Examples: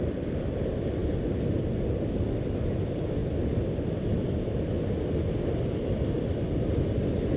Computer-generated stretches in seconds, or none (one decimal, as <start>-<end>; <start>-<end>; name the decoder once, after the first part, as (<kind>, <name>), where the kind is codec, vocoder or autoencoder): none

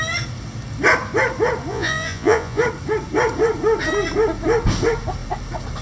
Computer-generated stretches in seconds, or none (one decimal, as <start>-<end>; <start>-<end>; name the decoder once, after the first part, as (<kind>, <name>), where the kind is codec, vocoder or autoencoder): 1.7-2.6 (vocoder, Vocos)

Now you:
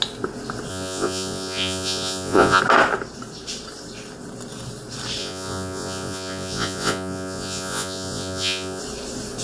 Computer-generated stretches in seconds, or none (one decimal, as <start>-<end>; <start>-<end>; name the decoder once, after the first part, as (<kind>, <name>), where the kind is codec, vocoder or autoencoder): 0.7-2.6 (vocoder, Vocos); 5.2-8.8